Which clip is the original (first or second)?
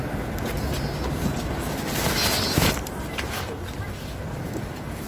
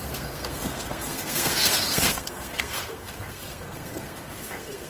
first